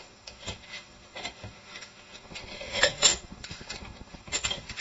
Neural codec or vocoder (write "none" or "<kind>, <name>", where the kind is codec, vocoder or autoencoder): autoencoder, DAC-VAE